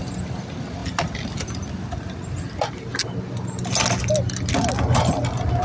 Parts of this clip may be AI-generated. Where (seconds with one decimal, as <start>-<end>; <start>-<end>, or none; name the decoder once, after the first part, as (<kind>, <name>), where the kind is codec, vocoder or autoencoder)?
none